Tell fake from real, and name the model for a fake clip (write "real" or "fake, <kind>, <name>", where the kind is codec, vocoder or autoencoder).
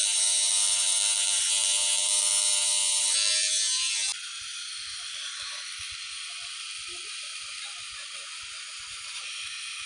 real